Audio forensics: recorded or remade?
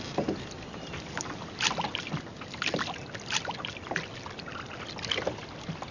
recorded